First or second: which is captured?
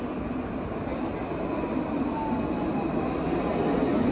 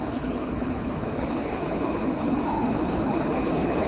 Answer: first